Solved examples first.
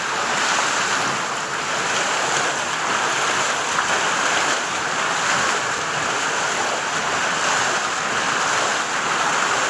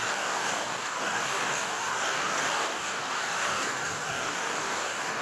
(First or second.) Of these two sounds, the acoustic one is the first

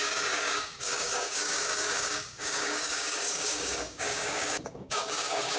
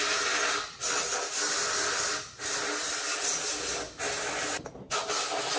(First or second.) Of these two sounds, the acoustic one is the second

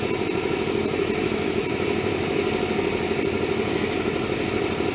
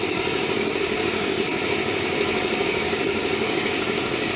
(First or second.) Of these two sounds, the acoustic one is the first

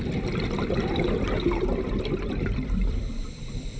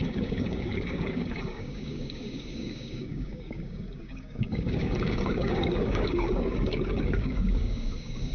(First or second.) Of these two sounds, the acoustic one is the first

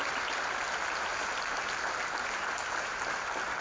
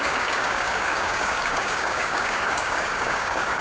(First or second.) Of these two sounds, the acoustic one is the first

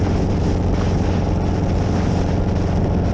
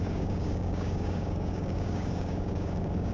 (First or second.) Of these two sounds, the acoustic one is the first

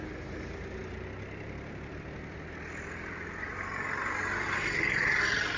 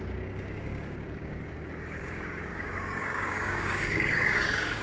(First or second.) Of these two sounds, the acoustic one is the first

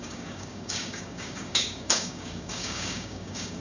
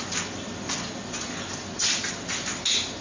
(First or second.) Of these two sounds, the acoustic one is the second